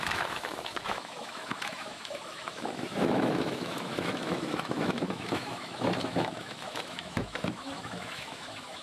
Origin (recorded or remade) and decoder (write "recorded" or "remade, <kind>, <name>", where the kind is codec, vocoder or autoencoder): remade, autoencoder, DAC-VAE